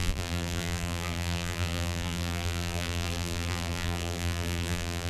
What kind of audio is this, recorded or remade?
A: remade